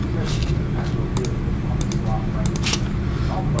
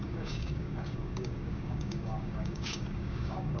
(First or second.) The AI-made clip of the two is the second